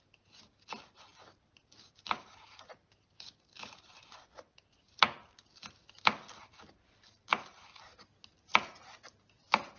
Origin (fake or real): real